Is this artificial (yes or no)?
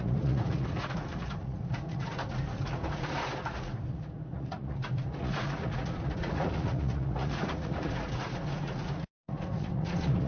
yes